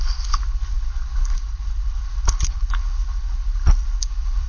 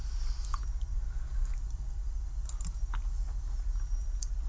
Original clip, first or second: second